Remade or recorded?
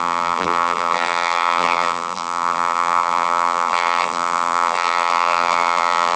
remade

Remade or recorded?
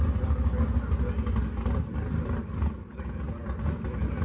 recorded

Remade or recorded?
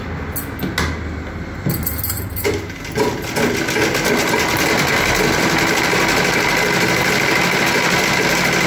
recorded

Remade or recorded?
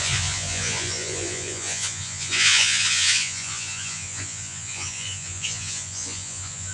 remade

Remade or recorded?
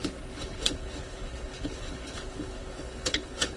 remade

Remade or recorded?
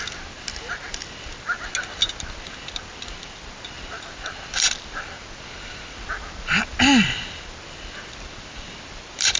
recorded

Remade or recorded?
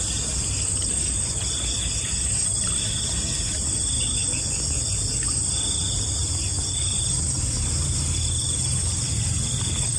recorded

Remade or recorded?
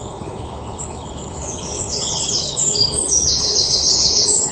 remade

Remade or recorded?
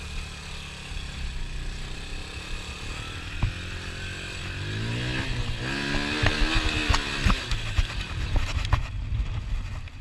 recorded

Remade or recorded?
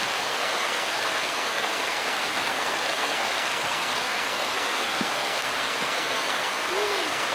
remade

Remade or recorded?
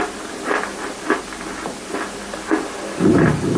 recorded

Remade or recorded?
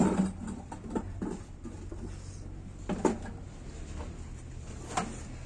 recorded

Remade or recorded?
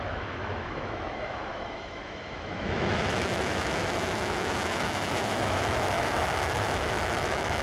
remade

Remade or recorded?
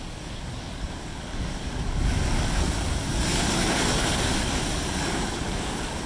remade